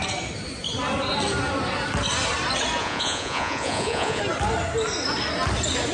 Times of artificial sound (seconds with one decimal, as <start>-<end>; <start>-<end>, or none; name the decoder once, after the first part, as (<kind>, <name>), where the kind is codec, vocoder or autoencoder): 2.8-4.2 (vocoder, Vocos)